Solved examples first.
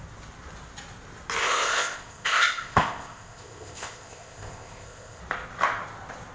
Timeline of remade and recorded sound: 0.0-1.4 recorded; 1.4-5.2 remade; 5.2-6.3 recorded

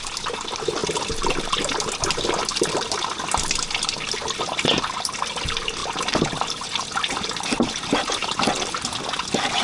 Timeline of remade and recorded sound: 0.0-9.6 recorded

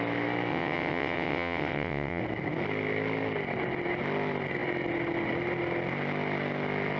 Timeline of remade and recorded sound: 0.0-0.5 recorded; 0.5-2.2 remade; 2.2-7.0 recorded

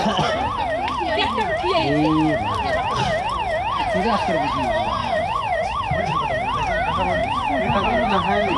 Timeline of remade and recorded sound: 0.0-5.0 recorded; 5.0-6.3 remade; 6.3-7.2 recorded; 7.2-8.6 remade

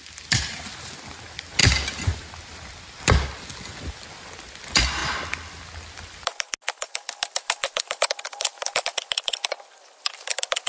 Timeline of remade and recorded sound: 0.0-10.7 recorded

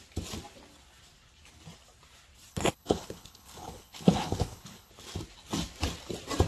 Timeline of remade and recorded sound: 0.0-2.5 recorded; 2.5-4.9 remade; 4.9-6.5 recorded

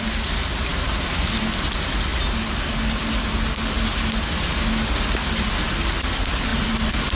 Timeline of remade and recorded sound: 0.0-7.1 recorded

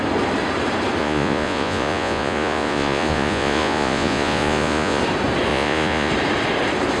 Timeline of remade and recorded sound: 0.0-1.0 recorded; 1.0-5.0 remade; 5.0-5.5 recorded; 5.5-6.1 remade; 6.1-7.0 recorded